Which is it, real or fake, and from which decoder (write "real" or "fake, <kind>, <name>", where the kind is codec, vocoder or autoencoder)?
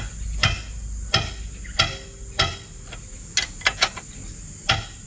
real